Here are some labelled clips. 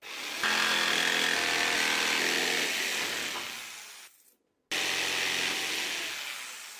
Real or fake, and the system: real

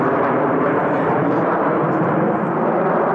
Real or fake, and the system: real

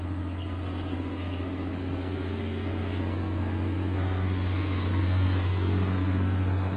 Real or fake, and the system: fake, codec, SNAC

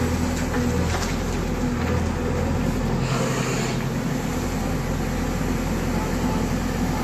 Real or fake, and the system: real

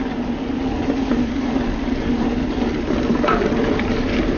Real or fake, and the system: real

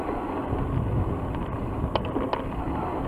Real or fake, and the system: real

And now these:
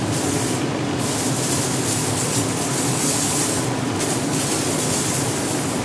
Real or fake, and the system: real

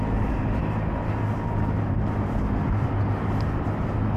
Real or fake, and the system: real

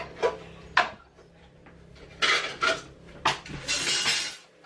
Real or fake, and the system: real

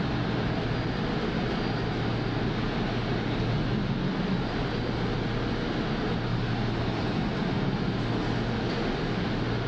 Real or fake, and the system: real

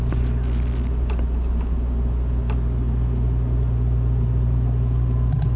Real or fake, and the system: real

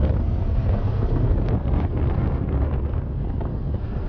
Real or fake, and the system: fake, codec, SNAC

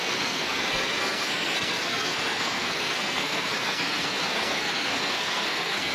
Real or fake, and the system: fake, codec, SNAC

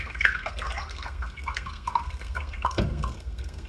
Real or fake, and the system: fake, codec, SNAC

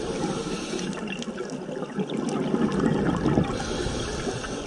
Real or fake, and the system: real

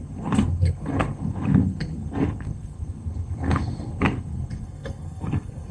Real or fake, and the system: fake, codec, SNAC